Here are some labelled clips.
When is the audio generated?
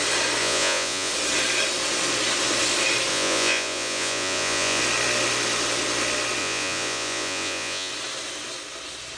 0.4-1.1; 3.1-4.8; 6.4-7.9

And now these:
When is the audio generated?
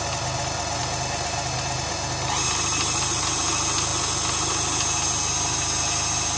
none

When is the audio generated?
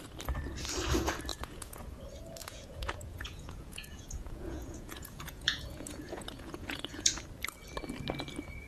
1.3-1.8; 2.4-7.1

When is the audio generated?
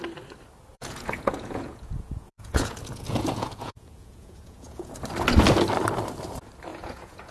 0.7-4.9; 6.7-7.3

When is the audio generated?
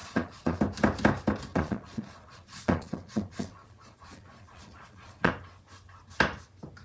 0.0-0.6; 1.5-5.3